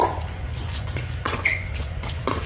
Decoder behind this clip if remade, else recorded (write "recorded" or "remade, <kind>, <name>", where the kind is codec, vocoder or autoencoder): remade, vocoder, Vocos